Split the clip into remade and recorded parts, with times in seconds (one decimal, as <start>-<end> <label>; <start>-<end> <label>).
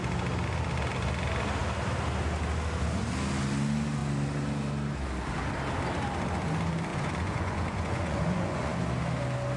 0.0-6.9 recorded; 6.9-8.8 remade; 8.8-9.6 recorded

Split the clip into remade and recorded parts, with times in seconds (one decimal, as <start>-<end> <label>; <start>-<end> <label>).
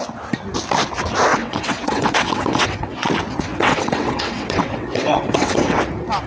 0.0-1.3 recorded; 1.3-3.1 remade; 3.1-3.5 recorded; 3.5-5.8 remade; 5.8-6.3 recorded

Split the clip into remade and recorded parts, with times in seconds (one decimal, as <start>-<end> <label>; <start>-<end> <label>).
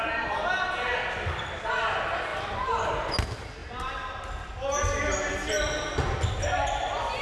0.0-2.3 recorded; 2.3-2.9 remade; 2.9-7.2 recorded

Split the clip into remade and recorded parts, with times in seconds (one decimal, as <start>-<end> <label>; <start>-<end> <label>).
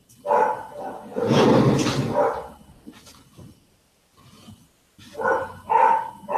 0.0-6.4 recorded